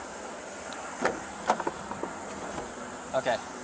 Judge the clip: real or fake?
real